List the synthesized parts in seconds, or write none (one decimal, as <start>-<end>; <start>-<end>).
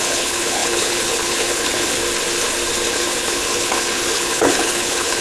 0.0-2.0; 2.9-5.2